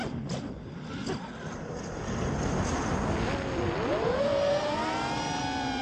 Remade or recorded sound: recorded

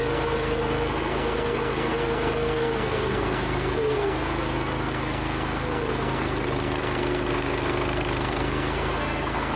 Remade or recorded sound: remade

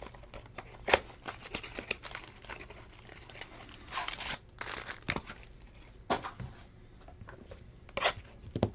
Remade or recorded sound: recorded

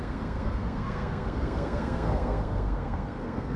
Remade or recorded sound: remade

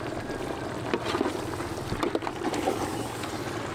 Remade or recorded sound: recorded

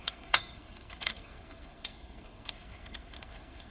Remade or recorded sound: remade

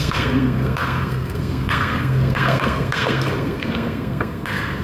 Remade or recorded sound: remade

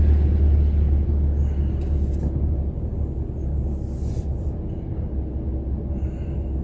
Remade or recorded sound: recorded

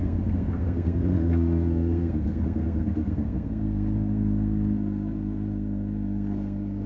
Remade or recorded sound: remade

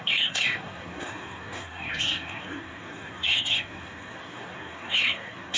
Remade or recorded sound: remade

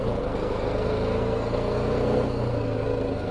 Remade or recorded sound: remade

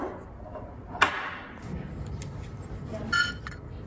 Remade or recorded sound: recorded